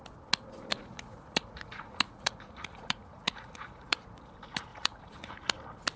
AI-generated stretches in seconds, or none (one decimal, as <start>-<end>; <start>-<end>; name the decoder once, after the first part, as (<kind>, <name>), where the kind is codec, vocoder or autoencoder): 0.7-4.3 (vocoder, Vocos); 4.7-5.4